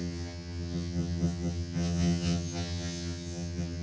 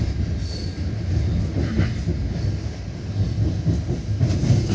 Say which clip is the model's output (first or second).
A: first